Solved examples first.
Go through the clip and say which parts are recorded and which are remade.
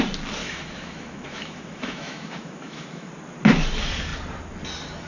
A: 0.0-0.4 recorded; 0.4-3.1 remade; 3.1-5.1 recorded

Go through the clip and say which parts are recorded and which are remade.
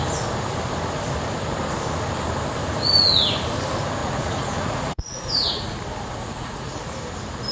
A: 0.0-4.0 recorded; 4.0-5.8 remade; 5.8-6.2 recorded; 6.2-6.8 remade; 6.8-7.5 recorded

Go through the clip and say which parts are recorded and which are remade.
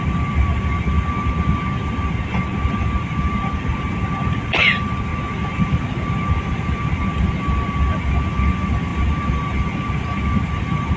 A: 0.0-11.0 recorded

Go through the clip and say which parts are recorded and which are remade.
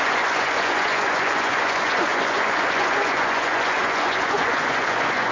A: 0.0-5.3 remade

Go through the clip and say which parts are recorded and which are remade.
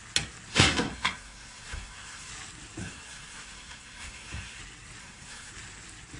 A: 0.0-0.5 recorded; 0.5-2.3 remade; 2.3-2.8 recorded; 2.8-4.6 remade; 4.6-5.0 recorded; 5.0-5.5 remade; 5.5-6.2 recorded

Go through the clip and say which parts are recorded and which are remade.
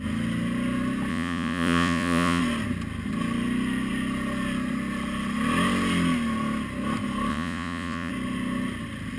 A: 0.0-1.1 recorded; 1.1-2.4 remade; 2.4-7.3 recorded; 7.3-8.1 remade; 8.1-9.2 recorded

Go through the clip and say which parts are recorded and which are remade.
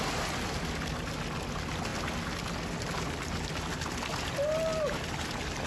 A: 0.0-5.7 recorded